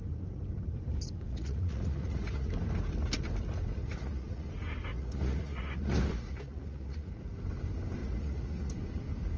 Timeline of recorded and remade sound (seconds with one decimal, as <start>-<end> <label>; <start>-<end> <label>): 0.0-1.3 recorded; 1.3-2.5 remade; 2.5-3.8 recorded; 3.8-4.5 remade; 4.5-4.9 recorded; 4.9-7.1 remade; 7.1-8.0 recorded; 8.0-8.7 remade; 8.7-9.4 recorded